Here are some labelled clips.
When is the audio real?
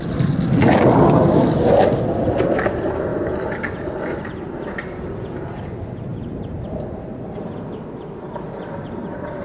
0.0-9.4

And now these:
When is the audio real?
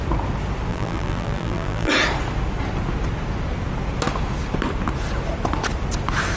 0.0-0.7; 1.9-6.4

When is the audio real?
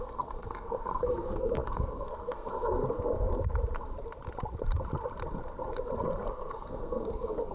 2.8-6.3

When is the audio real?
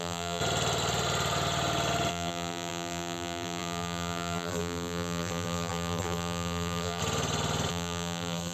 0.4-2.1; 7.0-7.7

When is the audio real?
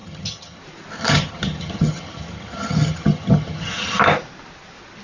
0.6-1.0; 4.0-5.0